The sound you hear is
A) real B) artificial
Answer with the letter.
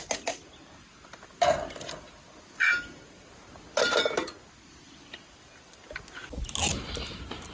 A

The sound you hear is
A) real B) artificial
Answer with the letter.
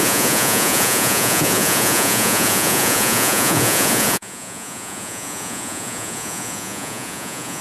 B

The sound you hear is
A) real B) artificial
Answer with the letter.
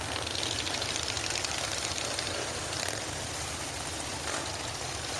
A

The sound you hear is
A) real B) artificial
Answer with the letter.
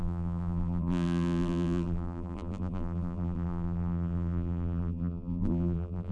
B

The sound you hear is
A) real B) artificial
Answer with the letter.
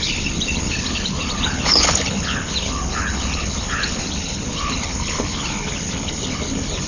B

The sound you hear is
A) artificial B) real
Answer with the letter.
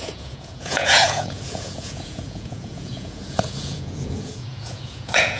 A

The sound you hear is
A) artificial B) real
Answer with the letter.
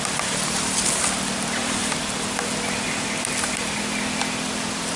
B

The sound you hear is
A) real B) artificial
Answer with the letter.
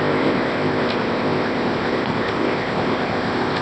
B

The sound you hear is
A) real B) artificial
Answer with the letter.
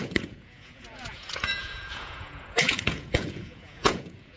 B